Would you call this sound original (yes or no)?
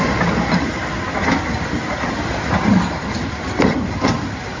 yes